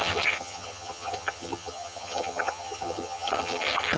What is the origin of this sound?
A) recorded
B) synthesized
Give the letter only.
B